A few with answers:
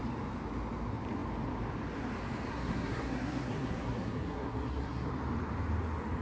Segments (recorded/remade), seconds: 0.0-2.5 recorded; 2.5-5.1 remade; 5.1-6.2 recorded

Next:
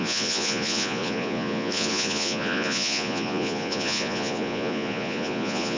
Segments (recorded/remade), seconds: 0.0-5.8 remade

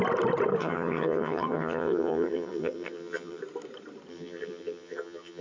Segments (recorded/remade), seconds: 0.0-0.6 recorded; 0.6-3.4 remade; 3.4-4.1 recorded; 4.1-5.4 remade